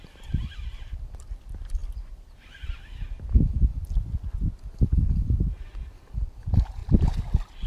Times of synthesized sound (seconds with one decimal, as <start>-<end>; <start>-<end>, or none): 0.0-3.7; 6.0-6.8